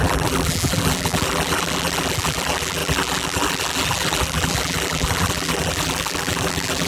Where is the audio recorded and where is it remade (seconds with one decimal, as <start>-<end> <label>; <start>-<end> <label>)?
0.0-6.9 remade